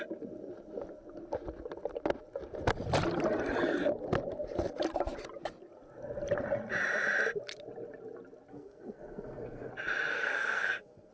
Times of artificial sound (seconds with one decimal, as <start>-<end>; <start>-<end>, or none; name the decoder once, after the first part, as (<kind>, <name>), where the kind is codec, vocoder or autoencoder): 8.5-9.7 (codec, SNAC); 10.1-11.1